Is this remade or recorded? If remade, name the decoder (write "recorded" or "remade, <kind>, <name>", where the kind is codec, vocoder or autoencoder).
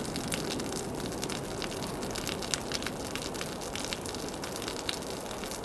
recorded